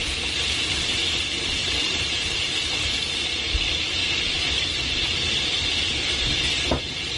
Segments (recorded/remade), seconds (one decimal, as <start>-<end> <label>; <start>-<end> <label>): 0.0-1.6 recorded; 1.6-2.9 remade; 2.9-4.0 recorded; 4.0-6.8 remade; 6.8-7.2 recorded